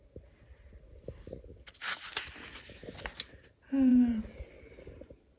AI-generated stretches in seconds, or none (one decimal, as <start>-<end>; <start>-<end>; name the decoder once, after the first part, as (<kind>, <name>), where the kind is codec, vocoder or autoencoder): 3.9-4.5 (vocoder, BigVGAN v2)